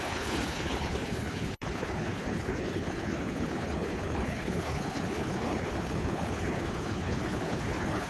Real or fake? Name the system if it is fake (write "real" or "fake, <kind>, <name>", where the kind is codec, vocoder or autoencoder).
fake, codec, HILCodec